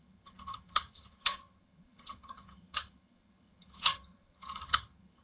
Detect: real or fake fake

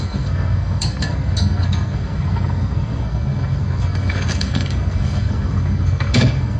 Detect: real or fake fake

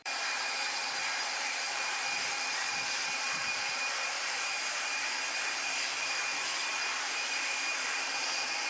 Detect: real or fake fake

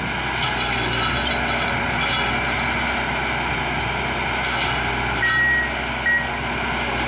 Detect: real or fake real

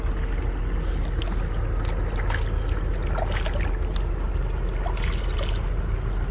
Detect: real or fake real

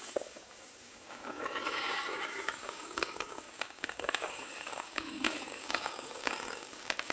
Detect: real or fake fake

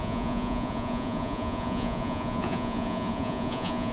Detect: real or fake fake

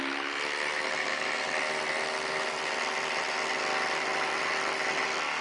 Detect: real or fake real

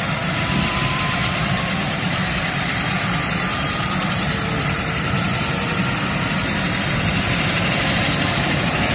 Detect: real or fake fake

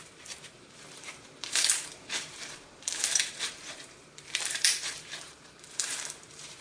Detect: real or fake fake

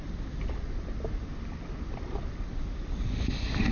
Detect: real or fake real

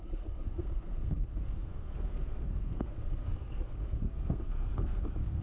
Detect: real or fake fake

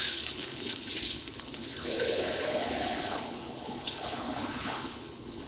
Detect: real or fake fake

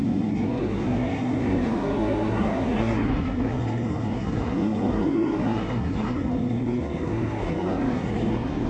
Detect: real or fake fake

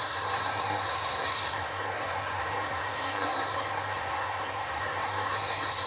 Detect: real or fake fake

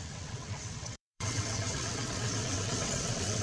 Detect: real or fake fake